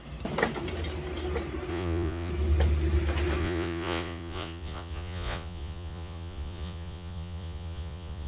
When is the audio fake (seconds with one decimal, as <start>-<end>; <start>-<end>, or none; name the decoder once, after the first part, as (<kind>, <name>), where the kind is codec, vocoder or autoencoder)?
1.7-2.3 (vocoder, Vocos); 3.4-8.3